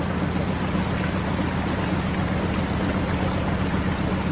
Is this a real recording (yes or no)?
yes